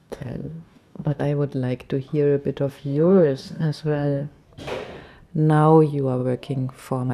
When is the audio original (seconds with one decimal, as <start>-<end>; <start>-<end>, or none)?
1.2-2.7; 4.3-7.1